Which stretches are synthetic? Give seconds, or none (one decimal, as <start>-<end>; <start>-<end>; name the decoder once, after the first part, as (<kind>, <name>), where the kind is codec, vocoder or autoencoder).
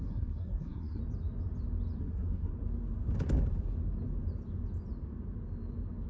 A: 0.0-1.0 (codec, SNAC); 2.0-2.5